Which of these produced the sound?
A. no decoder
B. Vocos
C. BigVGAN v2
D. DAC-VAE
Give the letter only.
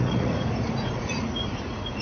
B